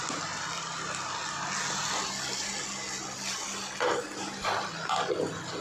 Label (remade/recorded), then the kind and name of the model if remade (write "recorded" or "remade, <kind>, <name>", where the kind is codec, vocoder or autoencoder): recorded